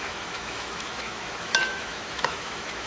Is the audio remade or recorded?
remade